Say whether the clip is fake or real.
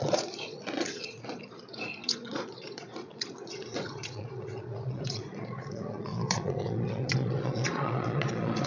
fake